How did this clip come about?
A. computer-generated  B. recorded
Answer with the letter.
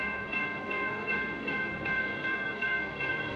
A